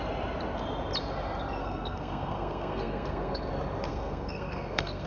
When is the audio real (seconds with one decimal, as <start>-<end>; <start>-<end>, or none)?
0.0-1.6; 3.5-3.9